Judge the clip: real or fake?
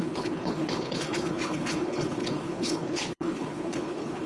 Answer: fake